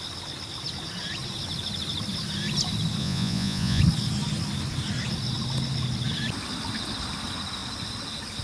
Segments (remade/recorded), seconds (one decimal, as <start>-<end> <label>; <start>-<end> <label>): 0.0-3.0 recorded; 3.0-3.8 remade; 3.8-8.4 recorded

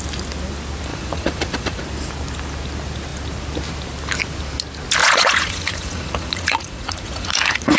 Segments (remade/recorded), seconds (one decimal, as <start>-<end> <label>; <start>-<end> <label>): 0.0-0.9 recorded; 0.9-1.8 remade; 1.8-5.0 recorded; 5.0-7.8 remade

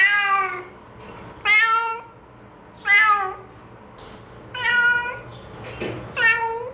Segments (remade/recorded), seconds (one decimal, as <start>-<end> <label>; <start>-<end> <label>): 0.0-6.7 recorded

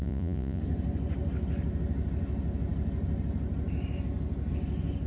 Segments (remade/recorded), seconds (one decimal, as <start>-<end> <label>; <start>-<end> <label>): 0.0-0.6 remade; 0.6-5.1 recorded

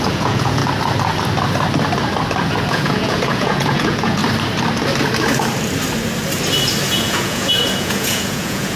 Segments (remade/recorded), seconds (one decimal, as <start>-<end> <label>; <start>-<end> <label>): 0.0-0.6 remade; 0.6-2.7 recorded; 2.7-4.2 remade; 4.2-6.9 recorded; 6.9-8.8 remade

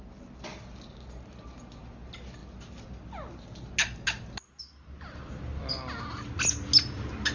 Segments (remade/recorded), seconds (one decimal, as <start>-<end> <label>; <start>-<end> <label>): 0.0-7.3 recorded